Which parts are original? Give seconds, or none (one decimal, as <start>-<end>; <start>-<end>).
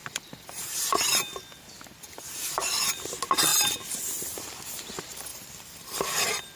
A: 1.0-5.3